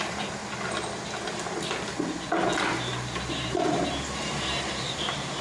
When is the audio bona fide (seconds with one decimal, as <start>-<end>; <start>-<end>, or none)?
0.4-3.3